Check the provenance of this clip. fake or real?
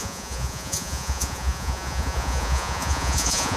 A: fake